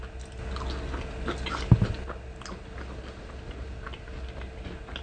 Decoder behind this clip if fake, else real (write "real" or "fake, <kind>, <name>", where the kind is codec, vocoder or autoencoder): real